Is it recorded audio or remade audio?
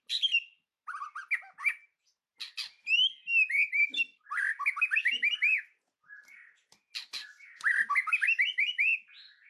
recorded